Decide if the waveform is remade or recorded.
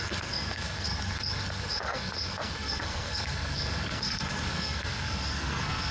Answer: remade